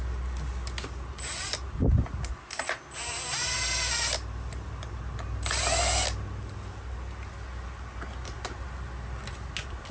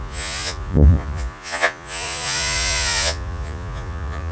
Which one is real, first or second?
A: first